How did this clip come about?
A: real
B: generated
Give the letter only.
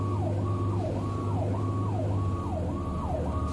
A